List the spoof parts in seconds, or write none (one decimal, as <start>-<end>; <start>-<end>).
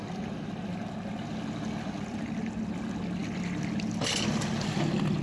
none